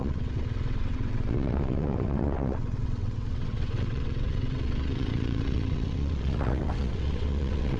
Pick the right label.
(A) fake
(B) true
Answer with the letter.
A